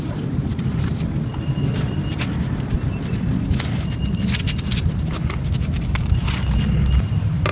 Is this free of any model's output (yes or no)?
yes